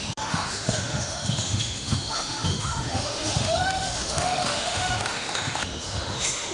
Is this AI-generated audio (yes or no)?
yes